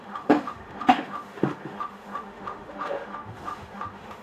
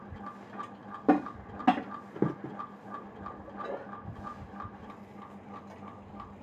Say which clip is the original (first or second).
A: second